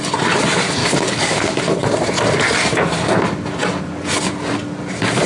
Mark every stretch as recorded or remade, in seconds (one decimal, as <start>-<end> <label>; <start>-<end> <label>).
0.0-0.8 recorded; 0.8-1.6 remade; 1.6-5.3 recorded